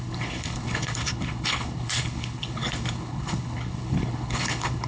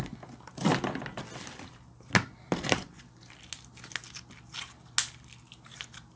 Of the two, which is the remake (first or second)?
first